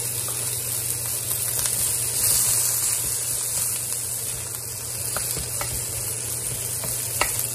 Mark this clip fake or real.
real